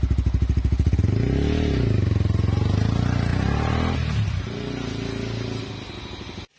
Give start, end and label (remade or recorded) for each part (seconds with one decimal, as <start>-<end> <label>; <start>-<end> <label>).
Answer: 0.0-6.6 recorded